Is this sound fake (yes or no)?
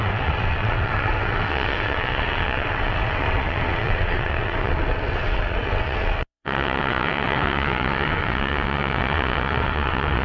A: yes